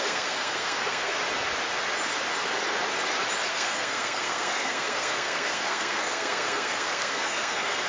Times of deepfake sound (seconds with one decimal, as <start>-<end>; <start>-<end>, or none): 0.0-1.2; 3.5-7.9